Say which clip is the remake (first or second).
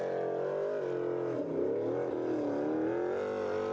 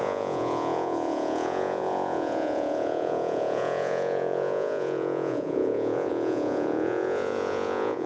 second